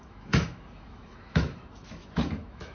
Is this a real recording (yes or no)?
no